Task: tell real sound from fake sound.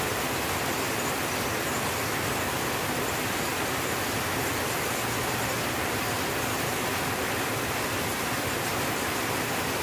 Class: real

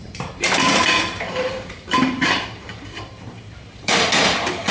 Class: fake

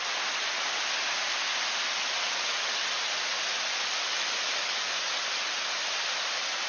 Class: real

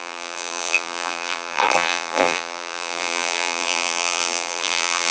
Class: fake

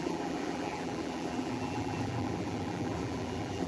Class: fake